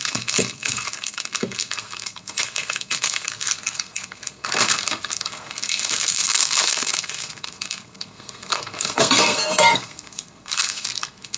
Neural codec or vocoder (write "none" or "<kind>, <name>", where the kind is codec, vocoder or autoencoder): codec, SNAC